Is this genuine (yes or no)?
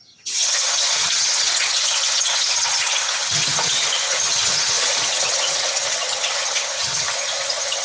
no